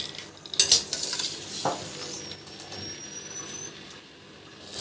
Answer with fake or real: real